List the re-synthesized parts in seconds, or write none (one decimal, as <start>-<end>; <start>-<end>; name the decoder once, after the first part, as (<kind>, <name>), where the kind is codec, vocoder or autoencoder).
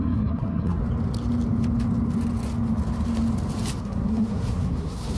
0.0-0.8 (codec, SNAC); 3.8-5.2